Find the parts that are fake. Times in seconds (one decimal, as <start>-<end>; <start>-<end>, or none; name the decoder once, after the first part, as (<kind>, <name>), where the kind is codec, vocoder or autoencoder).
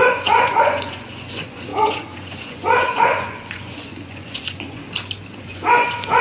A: 0.0-4.8 (vocoder, Vocos); 5.4-6.2